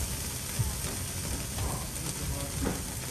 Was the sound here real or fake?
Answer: real